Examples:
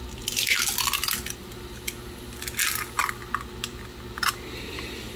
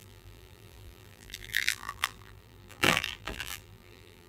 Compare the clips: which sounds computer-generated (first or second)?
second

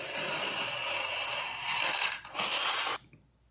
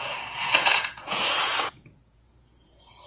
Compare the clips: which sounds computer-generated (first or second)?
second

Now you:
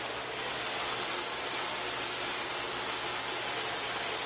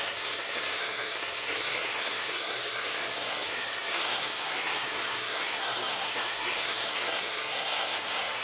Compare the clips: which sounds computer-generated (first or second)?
second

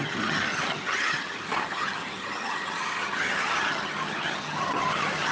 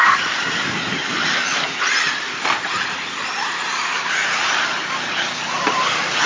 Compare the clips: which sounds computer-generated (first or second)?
first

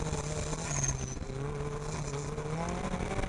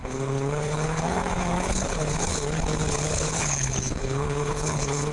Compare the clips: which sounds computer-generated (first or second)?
second